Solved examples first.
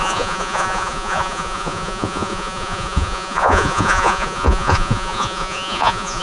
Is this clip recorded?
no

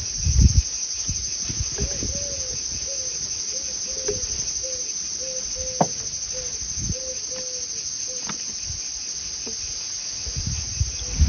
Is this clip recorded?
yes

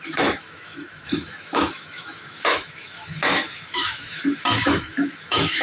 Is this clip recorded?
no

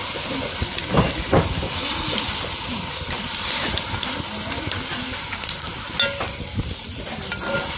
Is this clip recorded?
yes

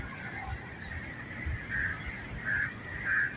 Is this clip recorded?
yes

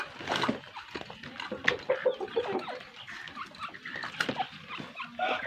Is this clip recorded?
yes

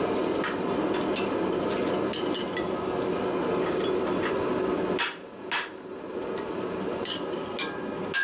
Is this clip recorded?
yes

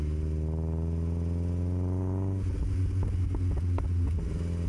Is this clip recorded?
yes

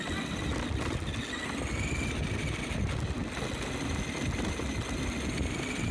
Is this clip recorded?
yes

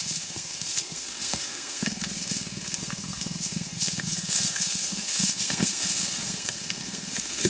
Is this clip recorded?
no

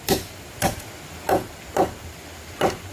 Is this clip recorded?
yes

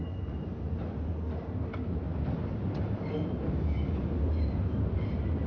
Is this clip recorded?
yes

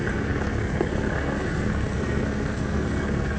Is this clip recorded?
no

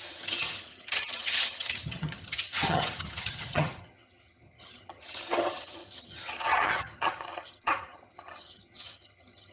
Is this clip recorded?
no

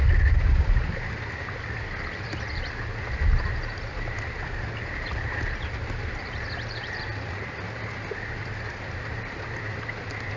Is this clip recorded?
yes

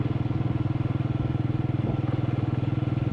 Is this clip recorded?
yes